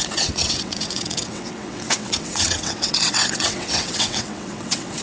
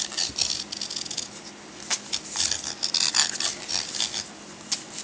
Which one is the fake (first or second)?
first